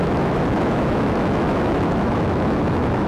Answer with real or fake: fake